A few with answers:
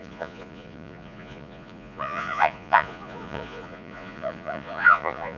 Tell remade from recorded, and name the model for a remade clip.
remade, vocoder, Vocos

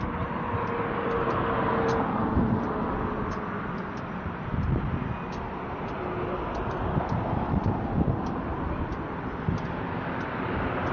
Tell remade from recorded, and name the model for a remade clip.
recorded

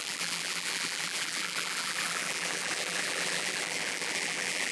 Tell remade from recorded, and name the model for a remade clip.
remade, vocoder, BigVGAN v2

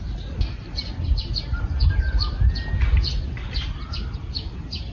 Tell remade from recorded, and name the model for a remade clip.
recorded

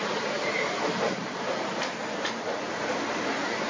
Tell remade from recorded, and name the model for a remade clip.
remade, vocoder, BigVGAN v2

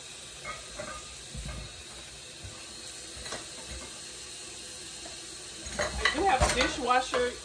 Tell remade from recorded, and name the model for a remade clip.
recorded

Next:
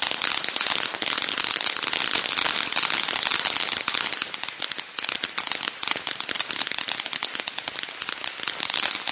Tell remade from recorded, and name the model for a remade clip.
recorded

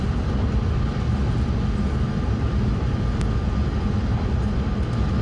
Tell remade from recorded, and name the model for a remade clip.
recorded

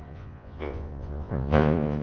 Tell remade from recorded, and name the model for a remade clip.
remade, vocoder, Vocos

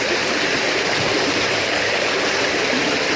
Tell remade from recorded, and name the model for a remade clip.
recorded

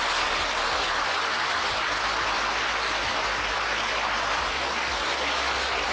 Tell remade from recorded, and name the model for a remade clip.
recorded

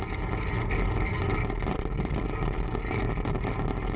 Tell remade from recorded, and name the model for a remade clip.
recorded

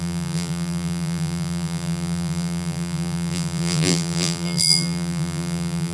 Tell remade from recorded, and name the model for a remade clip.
remade, vocoder, BigVGAN v2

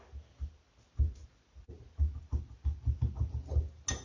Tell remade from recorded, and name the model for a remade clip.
recorded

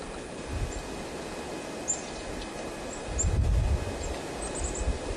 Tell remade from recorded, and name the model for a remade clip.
recorded